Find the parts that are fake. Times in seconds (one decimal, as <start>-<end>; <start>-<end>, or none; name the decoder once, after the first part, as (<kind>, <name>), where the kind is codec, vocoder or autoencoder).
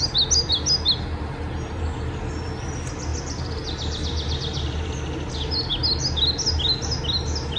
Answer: none